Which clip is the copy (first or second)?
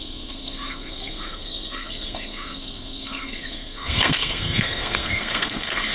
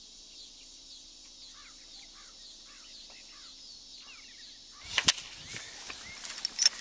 first